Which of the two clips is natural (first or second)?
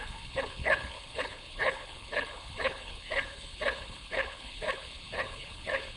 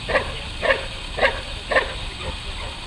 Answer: second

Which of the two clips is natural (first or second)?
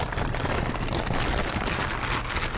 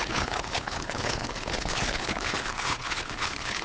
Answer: first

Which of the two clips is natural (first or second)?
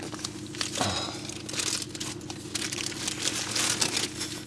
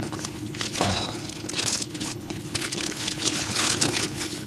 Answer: first